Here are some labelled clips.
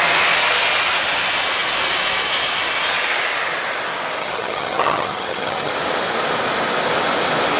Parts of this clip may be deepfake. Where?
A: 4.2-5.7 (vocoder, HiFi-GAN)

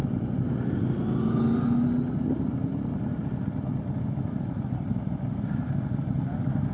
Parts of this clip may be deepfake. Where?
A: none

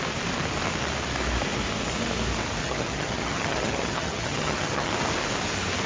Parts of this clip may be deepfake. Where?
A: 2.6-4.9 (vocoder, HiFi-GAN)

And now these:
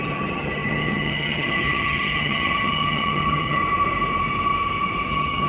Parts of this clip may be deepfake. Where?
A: 0.0-3.6 (vocoder, HiFi-GAN); 5.1-5.5

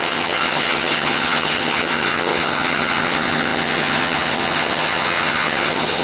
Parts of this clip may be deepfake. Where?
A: 0.0-6.0 (vocoder, HiFi-GAN)

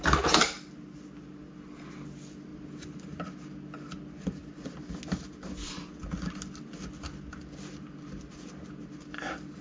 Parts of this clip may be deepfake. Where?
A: none